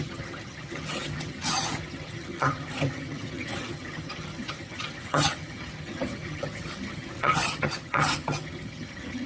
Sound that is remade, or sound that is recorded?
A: remade